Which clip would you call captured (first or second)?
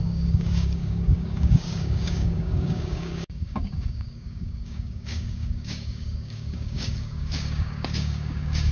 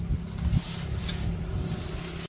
second